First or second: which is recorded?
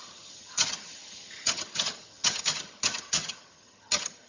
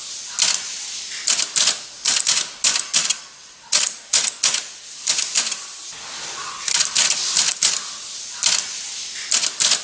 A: second